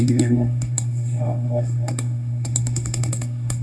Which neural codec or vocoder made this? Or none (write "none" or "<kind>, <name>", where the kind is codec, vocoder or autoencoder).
codec, SNAC